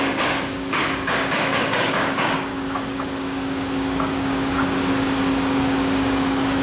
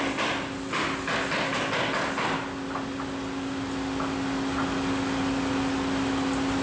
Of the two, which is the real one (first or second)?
second